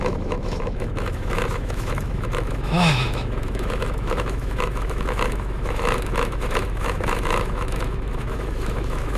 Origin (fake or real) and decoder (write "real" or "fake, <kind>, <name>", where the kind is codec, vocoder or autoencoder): fake, autoencoder, DAC-VAE